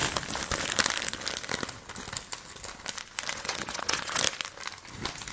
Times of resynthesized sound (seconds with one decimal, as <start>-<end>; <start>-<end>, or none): 3.3-4.2